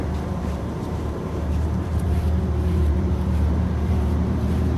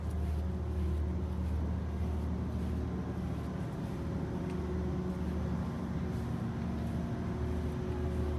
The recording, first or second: second